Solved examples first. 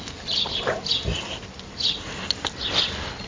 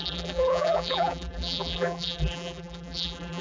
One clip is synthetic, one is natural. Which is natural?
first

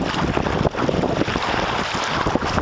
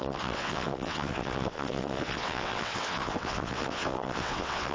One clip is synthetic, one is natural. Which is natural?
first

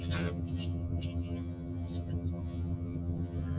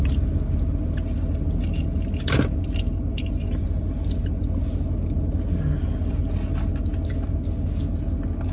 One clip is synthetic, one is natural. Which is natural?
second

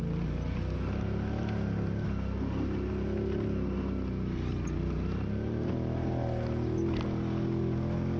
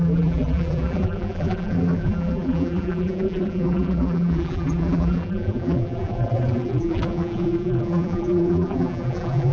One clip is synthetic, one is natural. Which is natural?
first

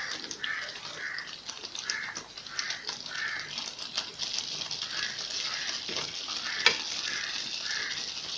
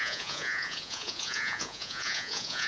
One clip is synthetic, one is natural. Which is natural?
first